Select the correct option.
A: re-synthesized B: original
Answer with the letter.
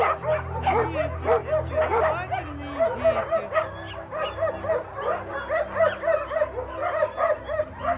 B